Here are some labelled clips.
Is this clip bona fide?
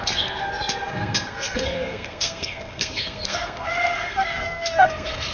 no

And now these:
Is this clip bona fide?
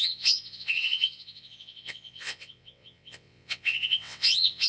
no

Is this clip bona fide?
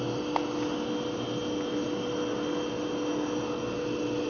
yes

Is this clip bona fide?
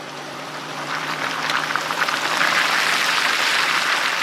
no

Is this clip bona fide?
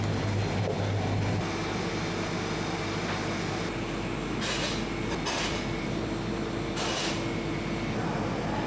yes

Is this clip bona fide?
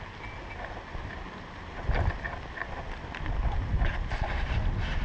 yes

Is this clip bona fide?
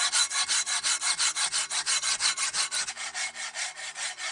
yes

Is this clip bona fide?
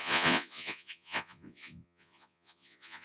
no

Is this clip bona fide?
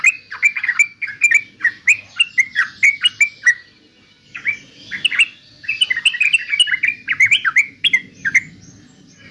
yes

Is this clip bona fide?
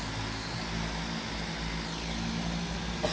yes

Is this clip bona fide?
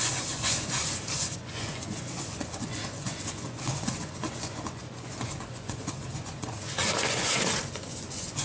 no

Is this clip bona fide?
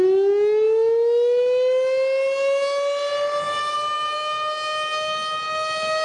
yes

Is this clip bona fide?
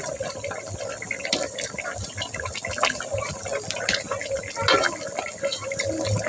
yes